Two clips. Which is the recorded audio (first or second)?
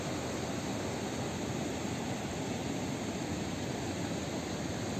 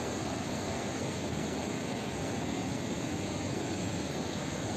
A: first